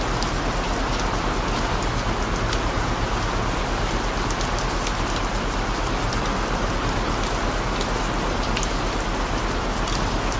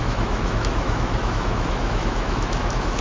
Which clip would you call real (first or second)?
first